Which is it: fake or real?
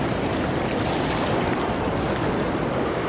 real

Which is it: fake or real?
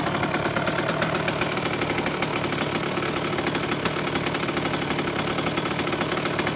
real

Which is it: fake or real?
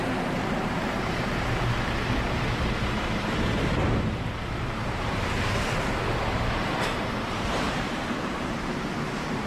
fake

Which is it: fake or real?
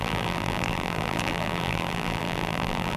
fake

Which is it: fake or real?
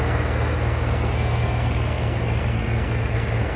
fake